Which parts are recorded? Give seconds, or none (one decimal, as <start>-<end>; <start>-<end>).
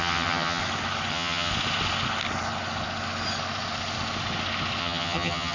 0.6-1.1; 1.5-4.8